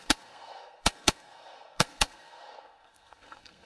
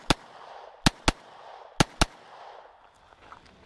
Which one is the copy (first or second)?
first